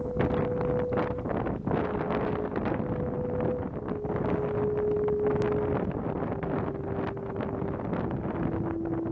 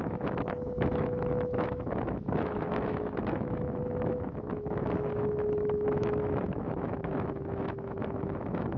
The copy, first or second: second